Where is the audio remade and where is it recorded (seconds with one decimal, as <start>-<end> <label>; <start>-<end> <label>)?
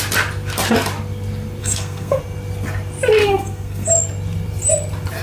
0.0-1.6 recorded; 1.6-2.2 remade; 2.2-3.2 recorded; 3.2-3.9 remade; 3.9-5.2 recorded